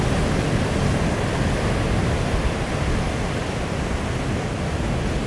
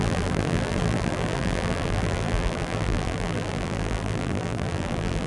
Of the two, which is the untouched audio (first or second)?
first